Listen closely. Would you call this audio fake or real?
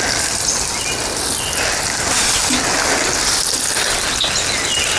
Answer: real